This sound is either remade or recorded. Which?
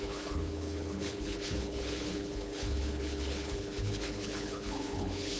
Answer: remade